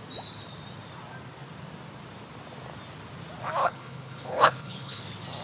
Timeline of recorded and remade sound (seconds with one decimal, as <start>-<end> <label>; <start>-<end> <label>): 0.0-3.6 recorded; 3.6-5.0 remade; 5.0-5.4 recorded